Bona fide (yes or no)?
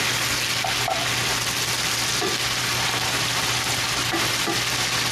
yes